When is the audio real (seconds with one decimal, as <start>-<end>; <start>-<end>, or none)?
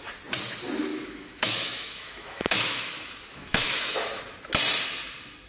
0.0-0.9; 4.2-5.5